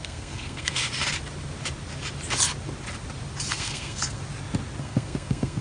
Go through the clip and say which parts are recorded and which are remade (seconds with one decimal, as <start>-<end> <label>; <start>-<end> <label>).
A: 0.0-0.8 remade; 0.8-3.5 recorded; 3.5-4.2 remade; 4.2-4.8 recorded; 4.8-5.6 remade